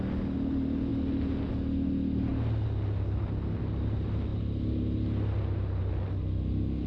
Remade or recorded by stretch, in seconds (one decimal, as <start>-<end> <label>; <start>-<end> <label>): 0.0-6.9 recorded